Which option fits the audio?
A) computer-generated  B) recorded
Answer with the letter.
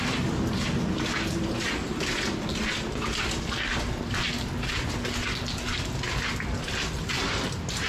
B